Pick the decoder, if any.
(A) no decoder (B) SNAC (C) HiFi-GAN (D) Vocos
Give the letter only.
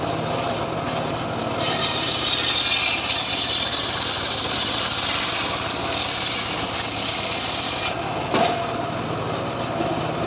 A